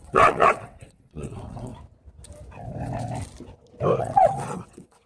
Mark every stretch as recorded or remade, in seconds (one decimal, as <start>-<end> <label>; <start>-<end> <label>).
0.0-1.7 remade; 1.7-4.0 recorded; 4.0-5.1 remade